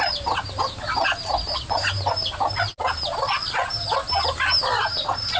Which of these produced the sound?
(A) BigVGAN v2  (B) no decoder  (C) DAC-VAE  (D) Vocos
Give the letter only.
B